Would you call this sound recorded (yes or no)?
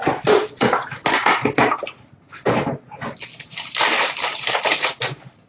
yes